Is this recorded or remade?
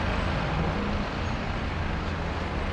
recorded